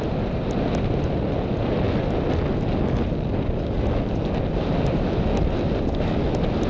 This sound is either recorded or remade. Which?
recorded